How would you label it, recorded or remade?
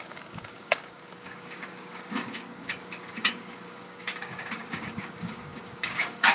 remade